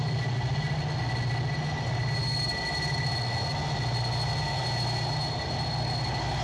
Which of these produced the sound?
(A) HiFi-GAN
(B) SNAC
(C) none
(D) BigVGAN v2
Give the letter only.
C